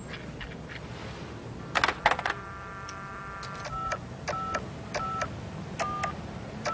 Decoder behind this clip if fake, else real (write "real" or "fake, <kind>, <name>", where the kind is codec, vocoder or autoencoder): real